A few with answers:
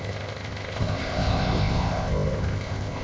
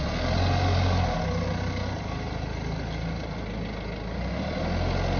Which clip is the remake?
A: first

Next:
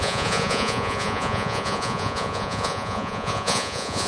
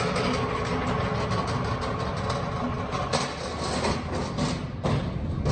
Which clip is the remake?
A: first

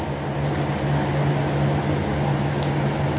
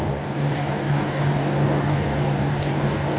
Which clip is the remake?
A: second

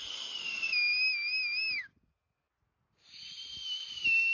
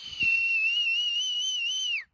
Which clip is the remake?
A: second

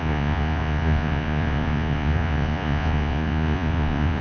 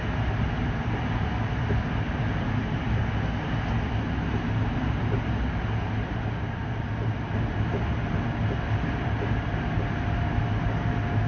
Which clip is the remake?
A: first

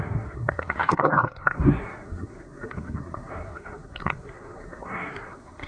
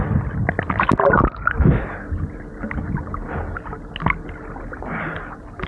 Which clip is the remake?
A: first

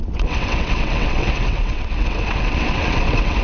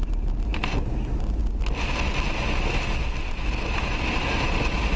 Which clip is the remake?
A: first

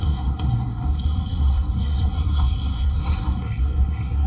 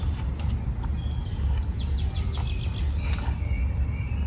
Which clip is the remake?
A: first